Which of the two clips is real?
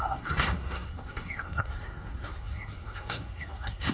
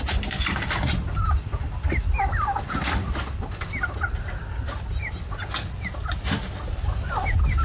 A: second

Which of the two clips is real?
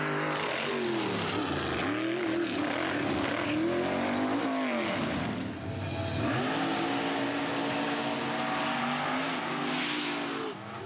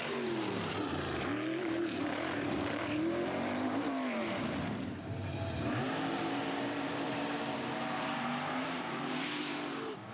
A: first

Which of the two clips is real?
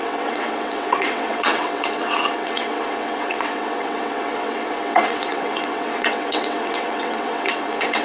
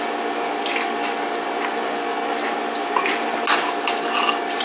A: second